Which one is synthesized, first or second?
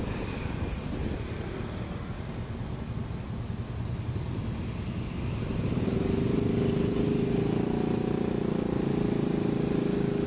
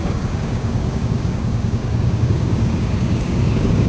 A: second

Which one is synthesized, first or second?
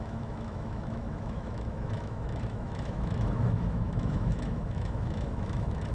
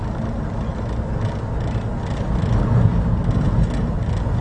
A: first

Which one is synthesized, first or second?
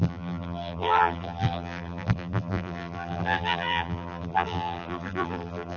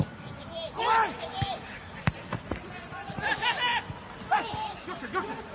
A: first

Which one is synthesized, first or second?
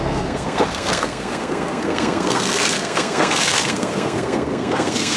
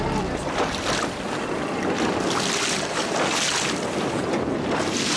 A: first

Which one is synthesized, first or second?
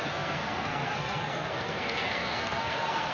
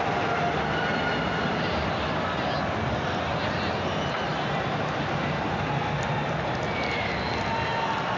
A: first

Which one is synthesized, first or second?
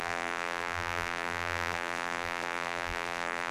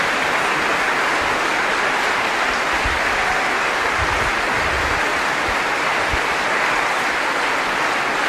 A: first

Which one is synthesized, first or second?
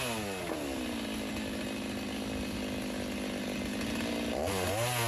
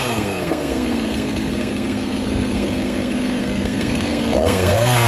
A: second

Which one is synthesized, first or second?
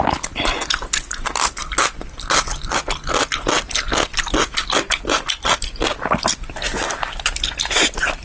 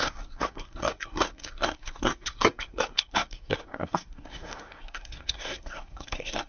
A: second